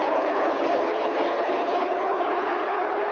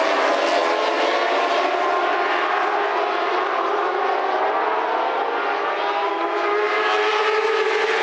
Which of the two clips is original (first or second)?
second